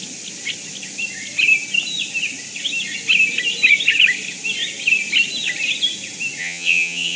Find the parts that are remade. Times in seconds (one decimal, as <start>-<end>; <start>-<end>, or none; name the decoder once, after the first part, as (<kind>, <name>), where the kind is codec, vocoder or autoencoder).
6.4-7.2 (vocoder, HiFi-GAN)